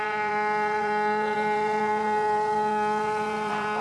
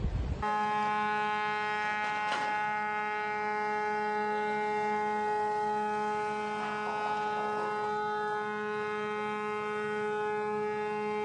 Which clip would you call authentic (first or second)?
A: second